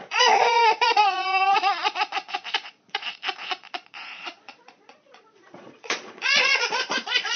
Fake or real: fake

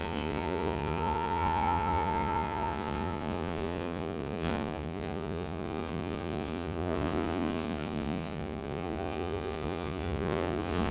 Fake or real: fake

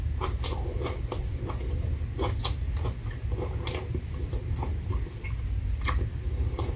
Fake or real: real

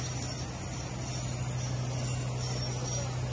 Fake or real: real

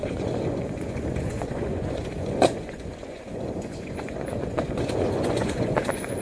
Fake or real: fake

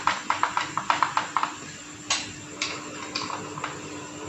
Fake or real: real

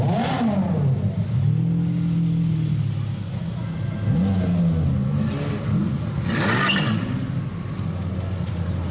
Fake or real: real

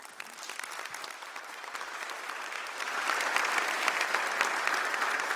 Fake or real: real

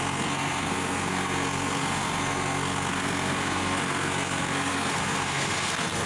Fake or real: fake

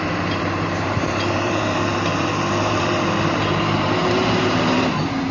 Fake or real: fake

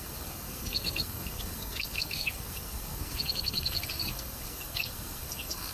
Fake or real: fake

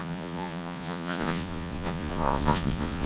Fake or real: fake